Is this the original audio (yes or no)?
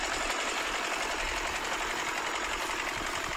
yes